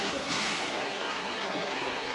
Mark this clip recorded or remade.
remade